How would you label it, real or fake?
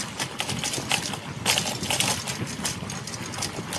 real